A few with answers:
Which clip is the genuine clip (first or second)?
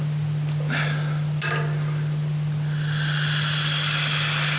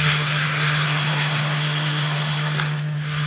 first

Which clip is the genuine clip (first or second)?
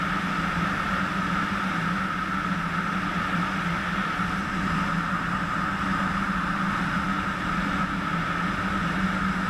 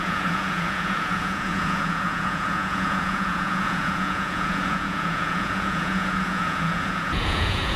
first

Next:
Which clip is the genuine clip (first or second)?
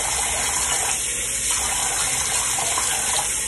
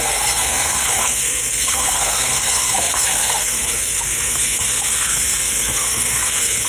first